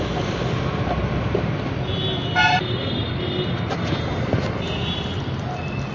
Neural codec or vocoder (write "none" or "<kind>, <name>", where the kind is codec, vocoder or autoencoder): none